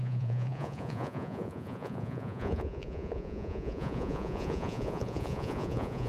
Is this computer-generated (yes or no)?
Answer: yes